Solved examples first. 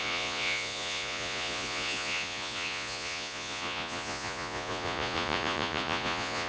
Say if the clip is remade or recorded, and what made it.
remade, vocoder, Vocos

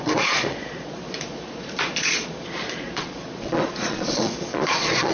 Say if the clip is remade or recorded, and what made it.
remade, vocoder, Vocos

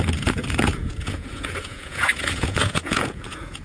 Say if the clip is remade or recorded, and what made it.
remade, vocoder, Vocos